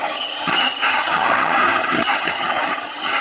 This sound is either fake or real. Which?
fake